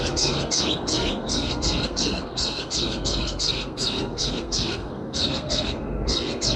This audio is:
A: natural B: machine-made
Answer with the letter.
B